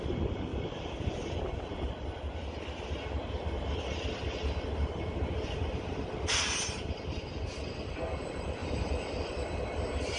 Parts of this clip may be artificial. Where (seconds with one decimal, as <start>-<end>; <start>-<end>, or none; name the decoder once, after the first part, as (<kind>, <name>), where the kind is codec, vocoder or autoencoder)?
0.5-1.1 (vocoder, BigVGAN v2); 8.6-9.6